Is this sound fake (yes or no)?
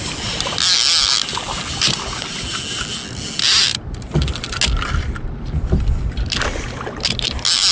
no